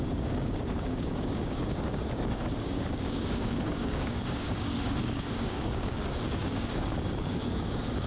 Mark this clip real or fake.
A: fake